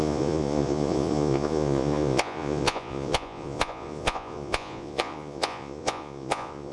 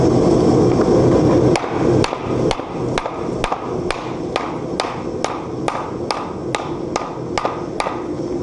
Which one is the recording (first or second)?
second